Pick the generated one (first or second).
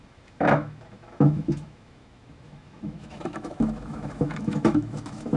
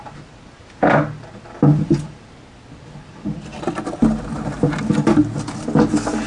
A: first